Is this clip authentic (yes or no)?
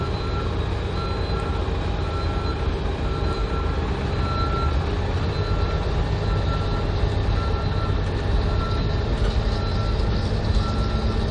yes